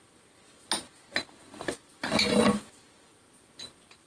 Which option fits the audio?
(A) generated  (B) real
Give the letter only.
B